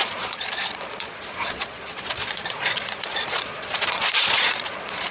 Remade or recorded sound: remade